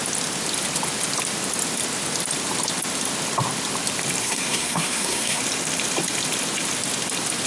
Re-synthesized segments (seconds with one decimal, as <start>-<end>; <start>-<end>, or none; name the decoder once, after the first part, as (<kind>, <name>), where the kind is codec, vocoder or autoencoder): 4.2-5.4 (codec, SNAC)